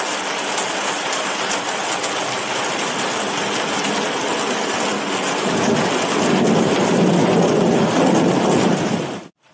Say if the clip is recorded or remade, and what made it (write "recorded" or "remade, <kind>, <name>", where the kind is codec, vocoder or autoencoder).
recorded